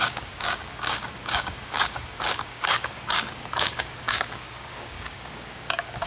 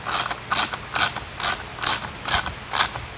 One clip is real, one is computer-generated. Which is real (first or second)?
second